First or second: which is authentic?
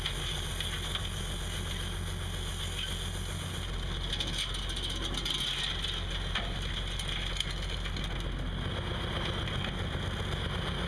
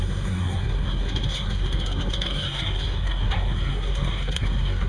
first